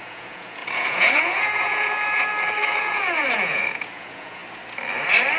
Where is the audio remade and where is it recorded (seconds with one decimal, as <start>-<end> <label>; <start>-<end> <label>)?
0.0-2.3 remade; 2.3-2.8 recorded; 2.8-4.4 remade; 4.4-5.4 recorded